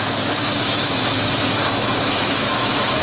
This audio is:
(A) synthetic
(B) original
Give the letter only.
A